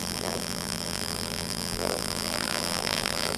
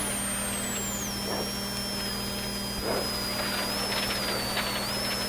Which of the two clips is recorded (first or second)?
second